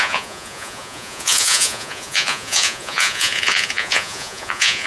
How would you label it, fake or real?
fake